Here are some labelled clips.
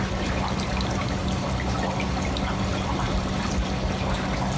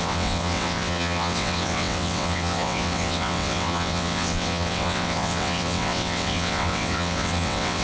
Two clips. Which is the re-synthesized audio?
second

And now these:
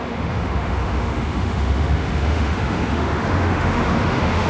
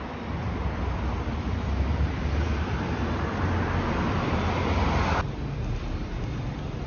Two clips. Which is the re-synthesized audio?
first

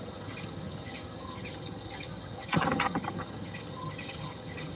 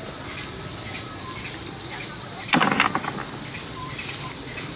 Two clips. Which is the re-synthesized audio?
first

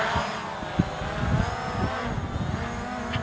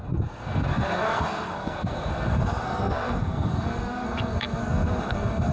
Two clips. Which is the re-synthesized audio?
second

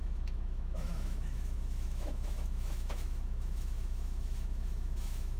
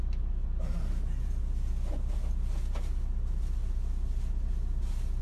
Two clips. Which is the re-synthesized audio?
first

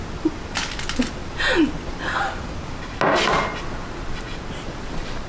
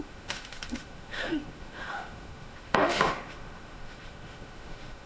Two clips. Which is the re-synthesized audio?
second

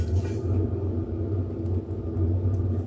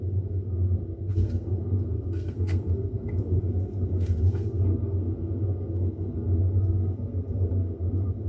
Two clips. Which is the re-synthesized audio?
second